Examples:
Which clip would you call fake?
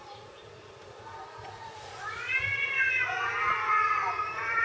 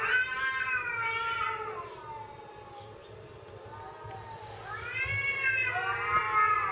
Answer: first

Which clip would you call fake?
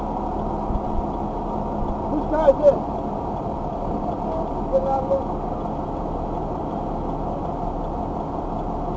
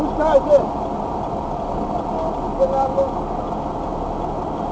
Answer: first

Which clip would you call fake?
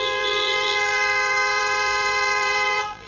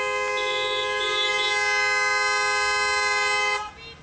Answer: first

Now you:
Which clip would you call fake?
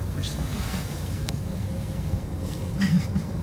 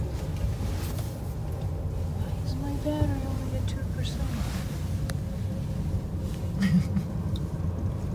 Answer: first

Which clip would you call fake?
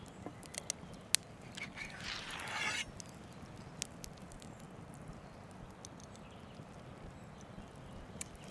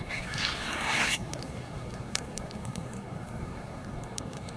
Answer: second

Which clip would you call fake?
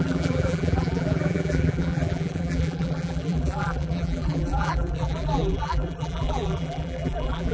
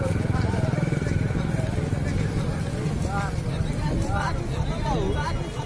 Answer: first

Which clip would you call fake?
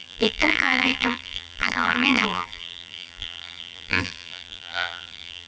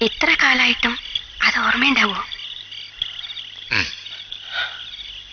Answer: first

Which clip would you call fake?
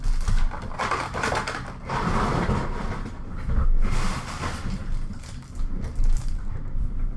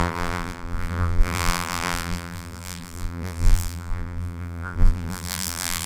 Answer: second